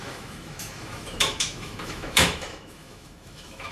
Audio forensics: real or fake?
fake